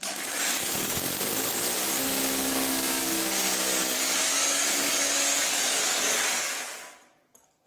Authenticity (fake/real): fake